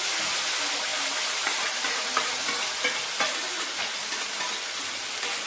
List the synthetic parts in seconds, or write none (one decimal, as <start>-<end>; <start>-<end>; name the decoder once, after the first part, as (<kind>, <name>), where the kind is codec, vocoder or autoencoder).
none